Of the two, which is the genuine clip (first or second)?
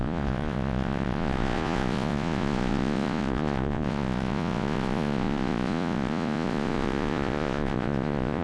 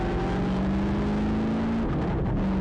second